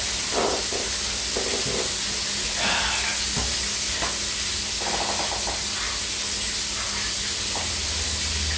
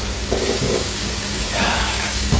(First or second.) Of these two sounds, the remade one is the second